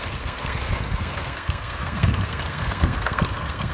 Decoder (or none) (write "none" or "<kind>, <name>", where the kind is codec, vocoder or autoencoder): codec, SNAC